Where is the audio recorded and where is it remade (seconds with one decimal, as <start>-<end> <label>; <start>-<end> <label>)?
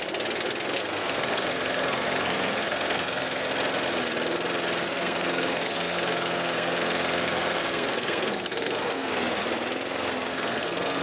0.0-0.8 recorded; 0.8-3.5 remade; 3.5-4.8 recorded; 4.8-9.1 remade; 9.1-10.3 recorded; 10.3-11.0 remade